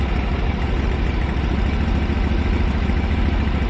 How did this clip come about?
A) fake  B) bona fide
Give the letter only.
B